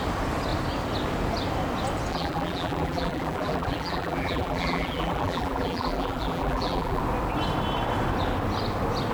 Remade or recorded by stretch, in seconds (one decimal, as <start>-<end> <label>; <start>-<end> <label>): 0.0-2.1 recorded; 2.1-7.0 remade; 7.0-9.1 recorded